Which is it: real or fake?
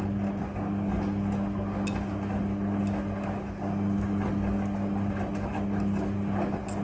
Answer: real